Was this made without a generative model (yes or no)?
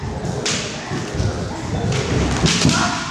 yes